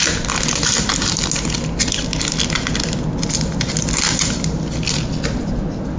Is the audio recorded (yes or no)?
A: yes